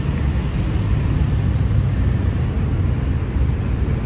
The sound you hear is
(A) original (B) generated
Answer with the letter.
A